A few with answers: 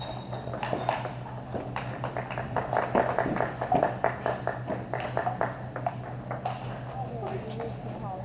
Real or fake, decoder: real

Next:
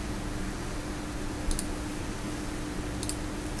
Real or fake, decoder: real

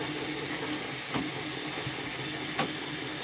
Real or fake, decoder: real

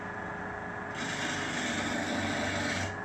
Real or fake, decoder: real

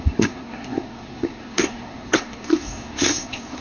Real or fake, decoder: fake, codec, SNAC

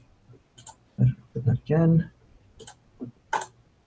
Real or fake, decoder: real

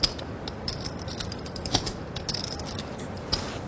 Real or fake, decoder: real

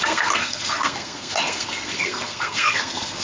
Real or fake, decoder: fake, codec, SNAC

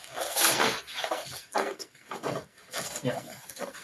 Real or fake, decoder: fake, codec, SNAC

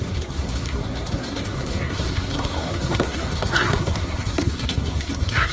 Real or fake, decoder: fake, codec, SNAC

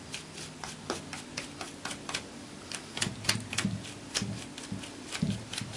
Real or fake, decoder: real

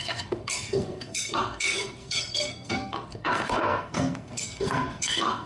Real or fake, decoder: fake, codec, SNAC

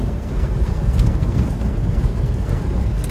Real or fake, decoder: fake, codec, SNAC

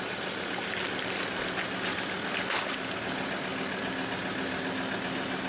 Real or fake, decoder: real